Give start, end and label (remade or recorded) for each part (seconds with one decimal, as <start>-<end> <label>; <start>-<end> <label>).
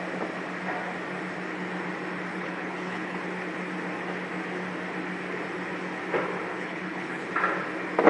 0.0-2.3 recorded; 2.3-3.2 remade; 3.2-6.5 recorded; 6.5-7.3 remade; 7.3-8.1 recorded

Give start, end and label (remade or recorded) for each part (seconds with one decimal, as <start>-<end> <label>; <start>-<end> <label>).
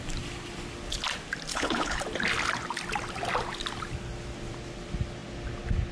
0.0-1.5 recorded; 1.5-2.0 remade; 2.0-5.9 recorded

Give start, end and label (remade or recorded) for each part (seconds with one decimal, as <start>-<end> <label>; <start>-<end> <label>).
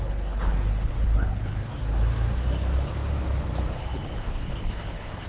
0.0-1.7 remade; 1.7-3.8 recorded; 3.8-5.3 remade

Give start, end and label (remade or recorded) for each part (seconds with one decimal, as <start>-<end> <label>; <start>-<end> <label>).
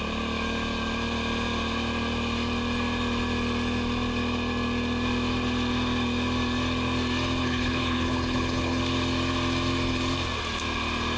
0.0-7.4 recorded; 7.4-8.8 remade; 8.8-11.2 recorded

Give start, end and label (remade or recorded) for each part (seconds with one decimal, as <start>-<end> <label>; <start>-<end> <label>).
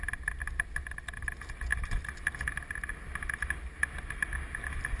0.0-5.0 recorded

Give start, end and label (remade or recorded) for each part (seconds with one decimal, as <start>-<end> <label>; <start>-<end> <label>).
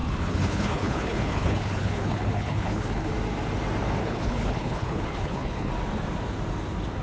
0.0-3.1 remade; 3.1-4.0 recorded; 4.0-5.7 remade; 5.7-7.0 recorded